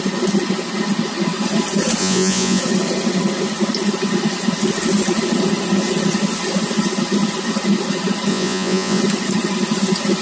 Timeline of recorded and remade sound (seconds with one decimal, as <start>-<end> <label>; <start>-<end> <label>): 0.0-2.0 recorded; 2.0-2.6 remade; 2.6-8.3 recorded; 8.3-9.0 remade; 9.0-10.2 recorded